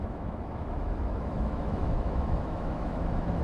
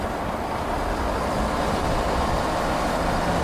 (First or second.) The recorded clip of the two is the second